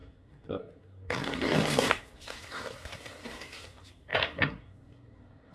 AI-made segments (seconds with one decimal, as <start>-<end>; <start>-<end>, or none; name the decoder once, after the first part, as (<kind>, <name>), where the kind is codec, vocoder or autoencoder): 0.0-5.5 (codec, SNAC)